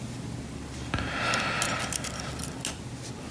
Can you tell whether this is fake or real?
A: real